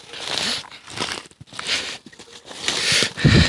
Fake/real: real